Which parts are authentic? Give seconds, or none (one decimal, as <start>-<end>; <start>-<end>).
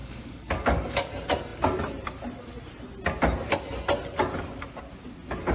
1.1-5.5